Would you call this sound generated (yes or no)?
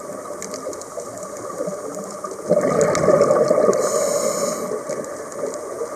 no